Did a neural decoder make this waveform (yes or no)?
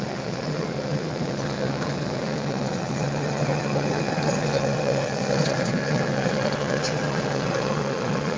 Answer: yes